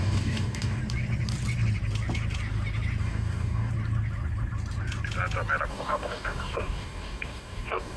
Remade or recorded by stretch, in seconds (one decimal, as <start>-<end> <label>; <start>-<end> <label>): 0.0-0.8 remade; 0.8-3.0 recorded; 3.0-3.7 remade; 3.7-5.7 recorded; 5.7-8.0 remade

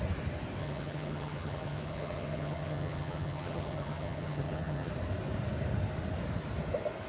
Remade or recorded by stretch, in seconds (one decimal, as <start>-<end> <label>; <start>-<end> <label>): 0.0-0.6 recorded; 0.6-4.9 remade; 4.9-7.1 recorded